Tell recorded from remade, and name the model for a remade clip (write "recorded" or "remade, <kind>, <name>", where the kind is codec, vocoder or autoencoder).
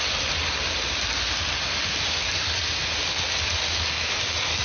recorded